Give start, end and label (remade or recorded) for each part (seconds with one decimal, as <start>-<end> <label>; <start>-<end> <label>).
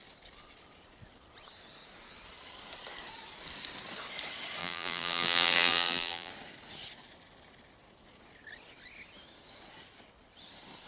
0.0-4.6 recorded; 4.6-6.3 remade; 6.3-10.9 recorded